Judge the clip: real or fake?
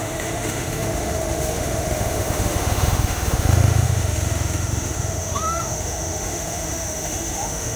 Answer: fake